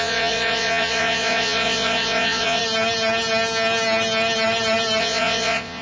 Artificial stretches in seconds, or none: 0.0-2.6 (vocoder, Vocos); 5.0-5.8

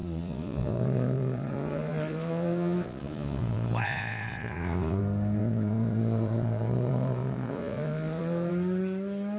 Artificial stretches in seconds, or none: 0.0-5.0 (vocoder, Vocos); 5.4-8.5

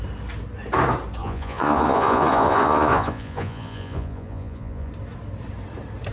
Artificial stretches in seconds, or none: 1.2-4.9 (vocoder, Vocos)

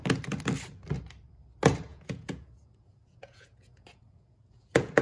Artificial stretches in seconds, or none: 1.9-5.0 (vocoder, Vocos)

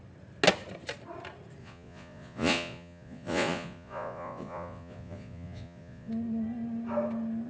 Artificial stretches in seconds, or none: 1.6-6.1 (vocoder, Vocos)

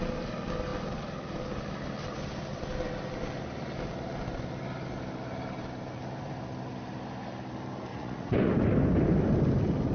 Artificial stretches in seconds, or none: 7.9-8.5 (vocoder, Vocos)

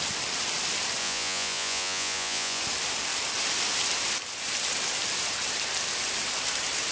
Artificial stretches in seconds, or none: 1.0-2.6 (vocoder, Vocos)